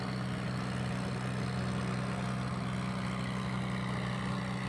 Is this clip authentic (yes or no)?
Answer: yes